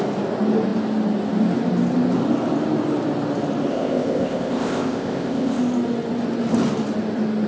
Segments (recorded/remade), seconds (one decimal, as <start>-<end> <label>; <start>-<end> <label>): 0.0-3.7 recorded; 3.7-5.6 remade; 5.6-7.5 recorded